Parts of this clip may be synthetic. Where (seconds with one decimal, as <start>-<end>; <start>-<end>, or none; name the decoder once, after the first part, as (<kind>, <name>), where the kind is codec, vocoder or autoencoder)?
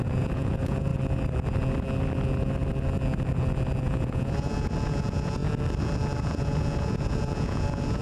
0.0-0.9 (vocoder, Vocos); 3.8-5.4; 6.2-8.0